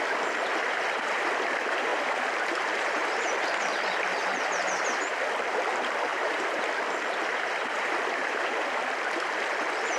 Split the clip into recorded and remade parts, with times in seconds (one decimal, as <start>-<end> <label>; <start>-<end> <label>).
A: 0.0-1.9 recorded; 1.9-3.4 remade; 3.4-6.1 recorded; 6.1-6.6 remade; 6.6-8.2 recorded; 8.2-8.8 remade; 8.8-10.0 recorded